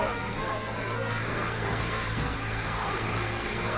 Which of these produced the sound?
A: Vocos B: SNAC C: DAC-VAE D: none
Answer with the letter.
B